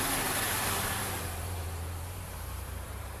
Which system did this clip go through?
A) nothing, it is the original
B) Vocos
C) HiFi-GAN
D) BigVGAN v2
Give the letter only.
D